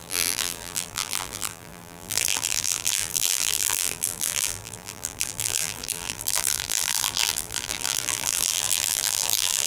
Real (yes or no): no